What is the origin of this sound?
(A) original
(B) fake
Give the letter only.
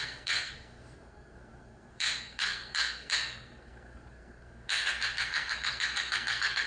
B